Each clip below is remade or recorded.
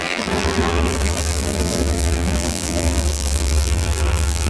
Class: remade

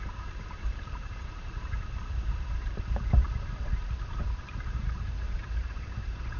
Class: remade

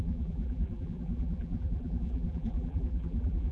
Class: remade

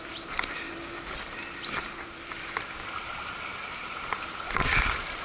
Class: remade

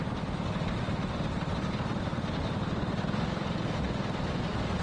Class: remade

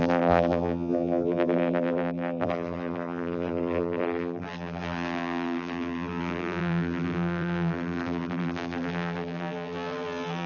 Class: remade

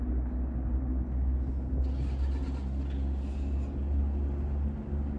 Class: recorded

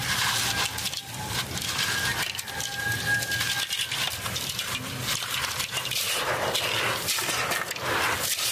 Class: recorded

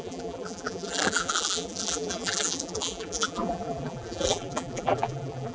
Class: remade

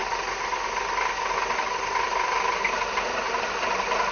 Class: recorded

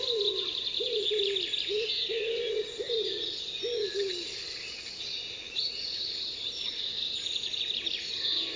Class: recorded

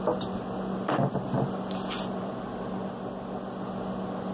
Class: recorded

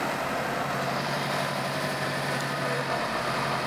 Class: remade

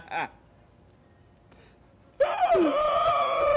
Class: recorded